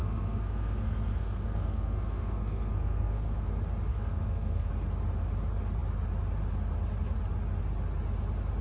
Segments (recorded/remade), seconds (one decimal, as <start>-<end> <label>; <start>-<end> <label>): 0.0-3.5 remade; 3.5-3.9 recorded; 3.9-4.7 remade; 4.7-8.6 recorded